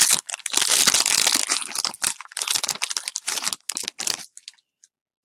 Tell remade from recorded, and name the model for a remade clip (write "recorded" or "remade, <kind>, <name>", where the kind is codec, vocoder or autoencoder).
recorded